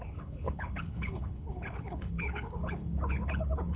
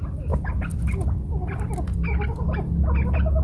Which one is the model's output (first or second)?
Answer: first